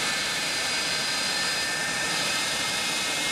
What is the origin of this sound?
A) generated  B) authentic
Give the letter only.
A